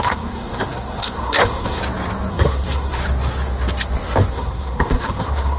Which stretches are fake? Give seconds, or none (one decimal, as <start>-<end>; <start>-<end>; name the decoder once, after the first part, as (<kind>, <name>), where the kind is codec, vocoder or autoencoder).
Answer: 0.0-1.8 (codec, SNAC); 2.3-3.0; 4.3-5.6